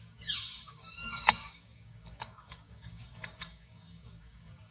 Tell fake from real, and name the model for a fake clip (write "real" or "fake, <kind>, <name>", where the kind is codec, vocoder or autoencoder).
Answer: fake, codec, DAC